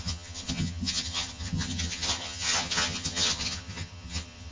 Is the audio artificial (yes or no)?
yes